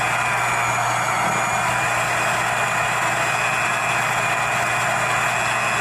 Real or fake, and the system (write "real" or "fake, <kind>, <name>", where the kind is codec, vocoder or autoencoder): real